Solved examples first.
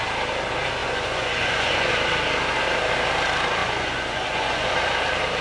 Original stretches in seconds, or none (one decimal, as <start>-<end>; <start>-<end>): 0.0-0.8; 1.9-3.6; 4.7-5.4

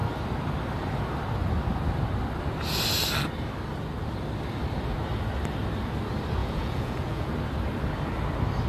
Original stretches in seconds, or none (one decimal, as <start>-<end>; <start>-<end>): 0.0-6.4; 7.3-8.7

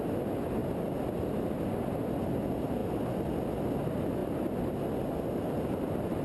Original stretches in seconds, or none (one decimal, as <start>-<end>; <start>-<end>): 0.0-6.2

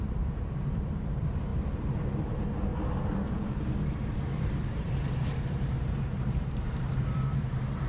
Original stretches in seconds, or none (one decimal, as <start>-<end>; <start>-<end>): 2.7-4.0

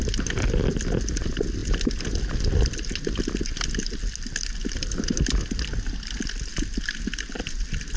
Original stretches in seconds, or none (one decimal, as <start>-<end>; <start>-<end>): 0.0-8.0

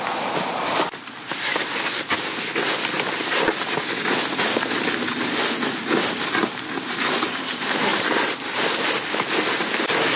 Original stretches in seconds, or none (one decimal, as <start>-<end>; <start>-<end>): 0.0-10.2